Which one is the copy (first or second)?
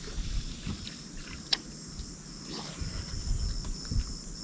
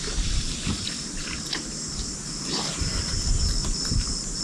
second